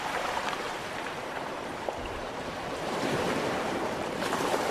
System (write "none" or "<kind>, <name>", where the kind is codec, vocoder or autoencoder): vocoder, BigVGAN v2